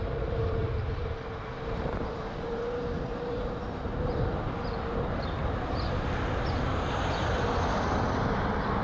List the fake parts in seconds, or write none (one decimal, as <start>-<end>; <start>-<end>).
0.4-5.2

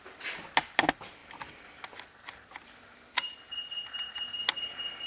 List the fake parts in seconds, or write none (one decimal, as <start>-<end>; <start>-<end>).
none

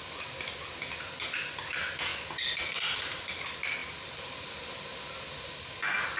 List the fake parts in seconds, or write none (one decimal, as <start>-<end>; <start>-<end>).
none

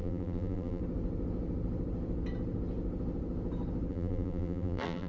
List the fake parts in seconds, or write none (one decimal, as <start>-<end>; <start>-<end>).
0.0-0.8; 3.9-5.1

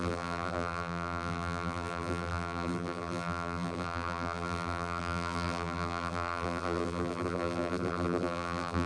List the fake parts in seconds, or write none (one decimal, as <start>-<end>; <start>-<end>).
0.0-8.9

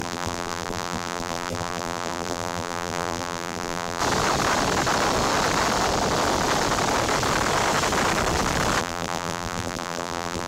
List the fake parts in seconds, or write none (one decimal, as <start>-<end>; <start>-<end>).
0.0-4.0; 8.8-10.5